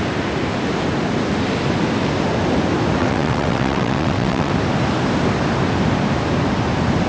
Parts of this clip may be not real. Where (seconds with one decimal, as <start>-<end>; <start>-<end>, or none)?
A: 3.0-4.5